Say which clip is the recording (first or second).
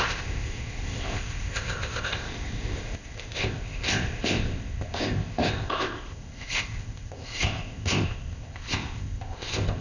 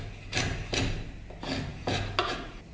second